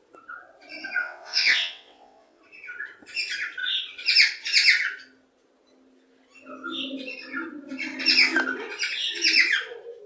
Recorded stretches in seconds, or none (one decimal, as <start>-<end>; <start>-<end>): 0.0-1.0; 2.4-10.1